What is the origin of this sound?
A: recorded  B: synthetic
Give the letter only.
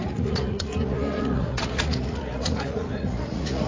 B